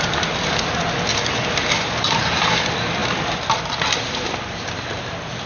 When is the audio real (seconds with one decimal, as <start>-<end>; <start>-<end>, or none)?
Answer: 0.0-5.5

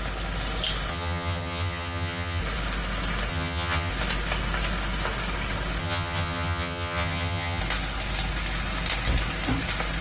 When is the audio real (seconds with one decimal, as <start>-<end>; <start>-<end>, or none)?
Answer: 0.0-0.9; 2.4-3.3; 3.9-5.8; 7.6-10.0

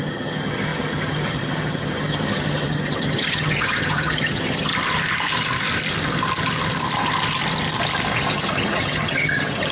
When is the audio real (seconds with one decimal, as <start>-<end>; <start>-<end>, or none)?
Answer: 4.7-8.2

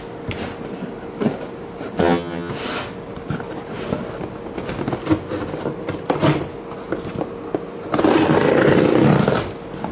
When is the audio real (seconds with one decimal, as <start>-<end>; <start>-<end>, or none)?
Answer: 0.0-2.0; 2.5-9.9